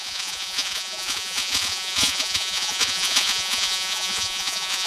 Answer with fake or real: fake